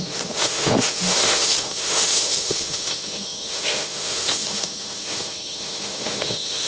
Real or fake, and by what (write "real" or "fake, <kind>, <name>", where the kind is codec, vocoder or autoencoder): fake, autoencoder, DAC-VAE